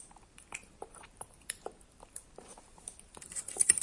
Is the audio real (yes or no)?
no